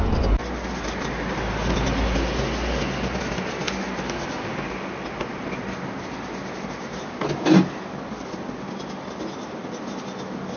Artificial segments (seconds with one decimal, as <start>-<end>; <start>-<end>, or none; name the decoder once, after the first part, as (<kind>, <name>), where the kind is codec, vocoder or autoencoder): none